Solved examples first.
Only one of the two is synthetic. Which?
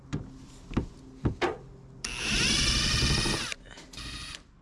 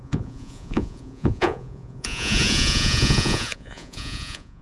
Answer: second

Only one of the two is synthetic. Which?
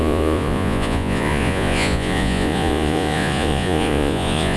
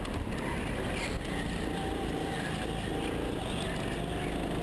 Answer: first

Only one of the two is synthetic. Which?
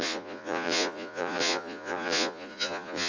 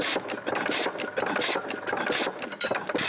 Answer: first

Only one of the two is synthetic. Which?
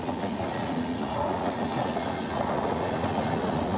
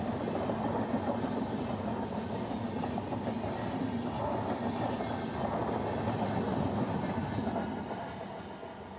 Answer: first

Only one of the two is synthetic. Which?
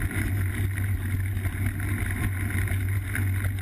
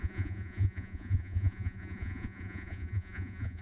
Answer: second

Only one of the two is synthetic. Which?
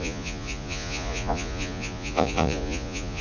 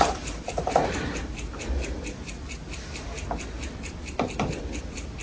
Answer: first